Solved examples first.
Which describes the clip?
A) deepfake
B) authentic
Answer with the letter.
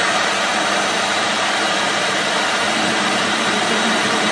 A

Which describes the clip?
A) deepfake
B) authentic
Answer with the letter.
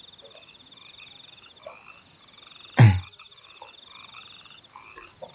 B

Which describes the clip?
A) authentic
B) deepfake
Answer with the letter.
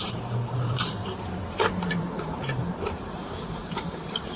B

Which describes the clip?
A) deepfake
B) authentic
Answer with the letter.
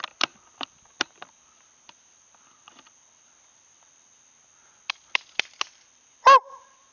A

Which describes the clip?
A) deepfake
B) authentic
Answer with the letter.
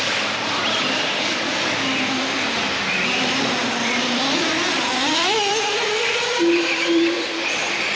A